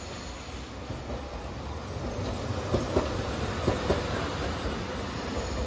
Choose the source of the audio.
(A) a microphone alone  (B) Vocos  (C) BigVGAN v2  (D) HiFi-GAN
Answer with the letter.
A